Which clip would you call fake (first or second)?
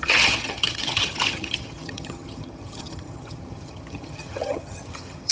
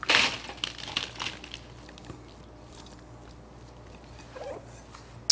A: first